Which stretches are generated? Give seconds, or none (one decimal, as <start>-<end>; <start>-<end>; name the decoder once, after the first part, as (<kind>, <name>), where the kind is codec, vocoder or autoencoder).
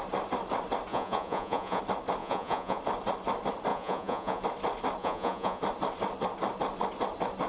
0.9-1.8 (vocoder, Vocos); 2.2-2.8; 3.7-4.4; 5.0-5.6